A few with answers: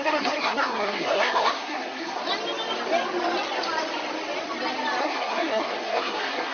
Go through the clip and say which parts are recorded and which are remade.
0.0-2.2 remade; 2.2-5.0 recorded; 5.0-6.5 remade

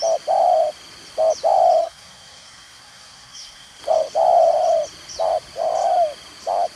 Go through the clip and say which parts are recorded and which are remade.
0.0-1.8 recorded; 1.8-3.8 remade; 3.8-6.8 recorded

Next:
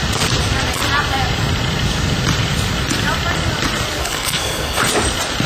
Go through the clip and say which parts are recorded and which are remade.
0.0-4.0 recorded; 4.0-4.8 remade; 4.8-5.5 recorded

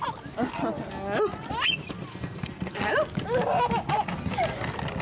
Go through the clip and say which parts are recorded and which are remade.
0.0-2.1 recorded; 2.1-2.9 remade; 2.9-5.0 recorded

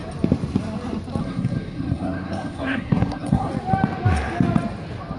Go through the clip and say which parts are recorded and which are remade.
0.0-1.2 recorded; 1.2-3.5 remade; 3.5-5.2 recorded

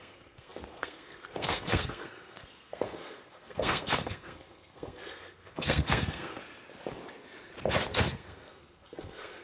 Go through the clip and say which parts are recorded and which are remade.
0.0-6.4 remade; 6.4-8.1 recorded; 8.1-9.4 remade